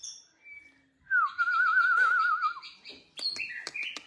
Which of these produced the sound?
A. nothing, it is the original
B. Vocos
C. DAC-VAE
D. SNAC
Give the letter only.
A